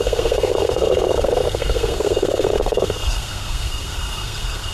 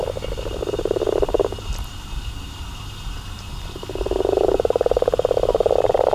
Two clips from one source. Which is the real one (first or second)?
second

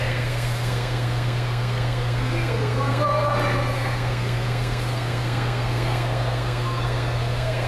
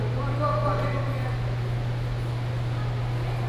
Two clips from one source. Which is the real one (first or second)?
second